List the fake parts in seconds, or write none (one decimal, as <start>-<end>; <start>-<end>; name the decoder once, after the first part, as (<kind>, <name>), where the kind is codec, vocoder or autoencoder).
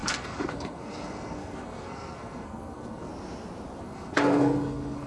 0.0-3.1 (codec, SNAC); 3.8-5.1